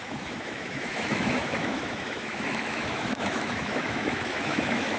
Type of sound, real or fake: fake